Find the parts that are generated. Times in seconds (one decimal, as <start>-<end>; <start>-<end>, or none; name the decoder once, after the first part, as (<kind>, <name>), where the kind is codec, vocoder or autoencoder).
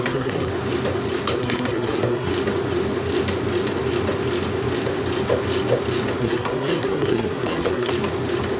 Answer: 0.0-0.5 (codec, SNAC); 1.4-2.3; 6.2-7.9